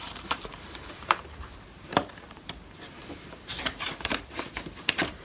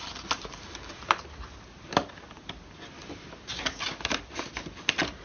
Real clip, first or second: second